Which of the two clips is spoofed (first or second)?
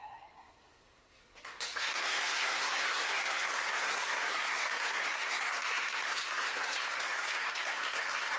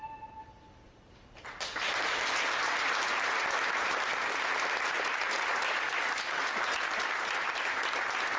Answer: first